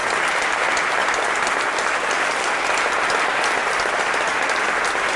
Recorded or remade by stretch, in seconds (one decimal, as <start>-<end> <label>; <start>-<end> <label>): 0.0-5.2 recorded